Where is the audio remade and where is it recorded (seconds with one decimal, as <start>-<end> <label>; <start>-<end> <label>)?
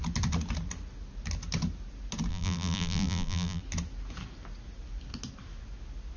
0.0-2.3 recorded; 2.3-3.6 remade; 3.6-6.2 recorded